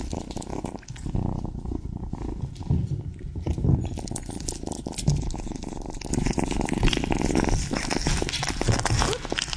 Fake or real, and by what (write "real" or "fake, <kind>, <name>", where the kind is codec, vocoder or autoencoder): real